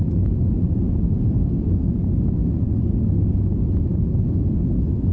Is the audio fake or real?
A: real